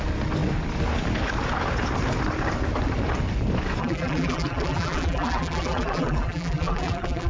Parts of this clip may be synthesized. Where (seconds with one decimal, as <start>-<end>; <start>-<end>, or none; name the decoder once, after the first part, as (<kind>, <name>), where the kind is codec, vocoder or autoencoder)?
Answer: 3.8-7.3 (vocoder, BigVGAN v2)